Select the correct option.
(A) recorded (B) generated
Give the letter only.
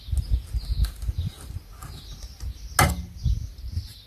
A